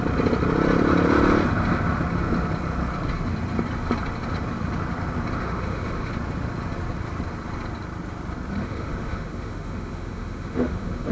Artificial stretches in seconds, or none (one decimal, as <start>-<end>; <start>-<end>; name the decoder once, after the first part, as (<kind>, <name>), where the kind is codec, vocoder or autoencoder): 5.4-6.1 (autoencoder, DAC-VAE); 8.6-11.1